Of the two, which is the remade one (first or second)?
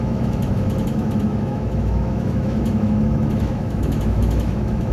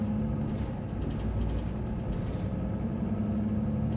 first